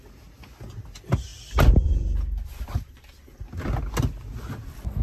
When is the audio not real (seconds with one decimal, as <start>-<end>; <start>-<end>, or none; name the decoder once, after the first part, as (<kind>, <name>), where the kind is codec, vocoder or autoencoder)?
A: none